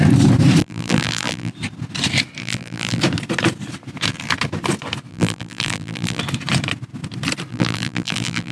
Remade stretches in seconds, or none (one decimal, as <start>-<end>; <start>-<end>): 0.6-1.5; 2.4-3.0; 5.1-6.2; 7.5-8.5